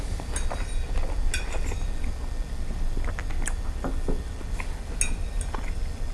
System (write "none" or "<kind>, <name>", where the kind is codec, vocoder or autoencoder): none